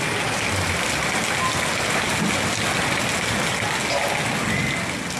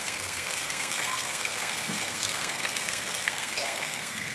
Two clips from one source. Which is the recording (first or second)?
first